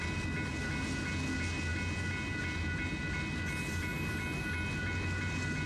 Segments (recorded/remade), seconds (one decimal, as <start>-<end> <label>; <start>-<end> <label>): 0.0-5.7 recorded